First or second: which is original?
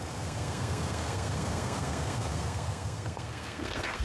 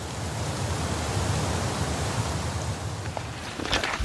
second